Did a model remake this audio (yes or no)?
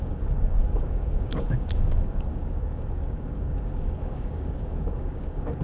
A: yes